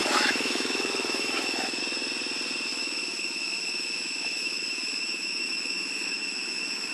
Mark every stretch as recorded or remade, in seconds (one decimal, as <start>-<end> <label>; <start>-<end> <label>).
0.0-1.8 remade; 1.8-2.7 recorded; 2.7-6.9 remade